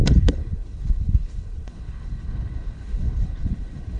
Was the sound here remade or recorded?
remade